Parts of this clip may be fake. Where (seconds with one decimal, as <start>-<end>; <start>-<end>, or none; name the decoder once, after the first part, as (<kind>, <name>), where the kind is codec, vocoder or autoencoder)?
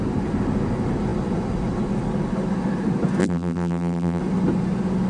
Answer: 3.2-4.2 (vocoder, BigVGAN v2)